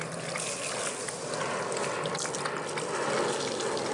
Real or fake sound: real